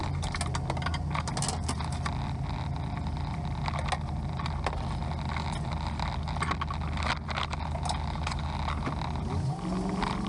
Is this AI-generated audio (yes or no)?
no